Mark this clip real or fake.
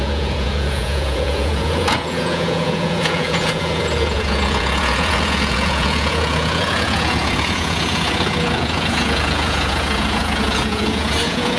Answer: fake